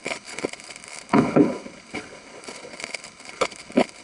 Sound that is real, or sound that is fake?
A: fake